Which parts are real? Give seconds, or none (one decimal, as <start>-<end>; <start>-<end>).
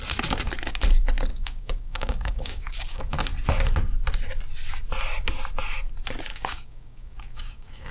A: 0.0-1.3; 3.0-6.3